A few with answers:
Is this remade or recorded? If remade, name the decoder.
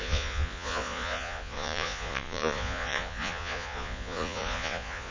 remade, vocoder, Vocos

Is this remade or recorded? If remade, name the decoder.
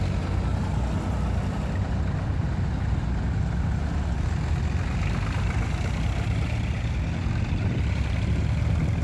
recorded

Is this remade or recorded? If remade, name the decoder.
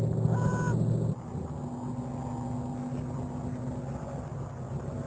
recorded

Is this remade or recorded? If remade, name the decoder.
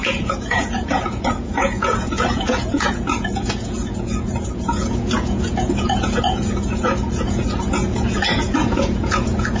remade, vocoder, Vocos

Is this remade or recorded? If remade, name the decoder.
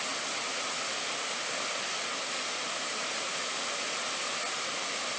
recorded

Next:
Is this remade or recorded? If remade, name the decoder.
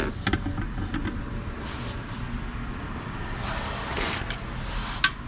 recorded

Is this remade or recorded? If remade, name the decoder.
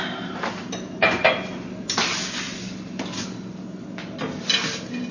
recorded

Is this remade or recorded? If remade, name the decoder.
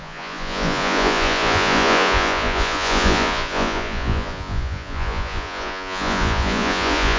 remade, vocoder, Vocos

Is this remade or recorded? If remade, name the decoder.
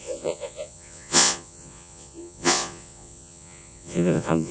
remade, vocoder, Vocos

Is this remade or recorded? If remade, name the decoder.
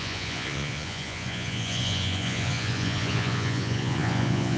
remade, vocoder, Vocos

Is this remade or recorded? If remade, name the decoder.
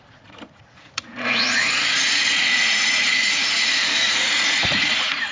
remade, vocoder, Vocos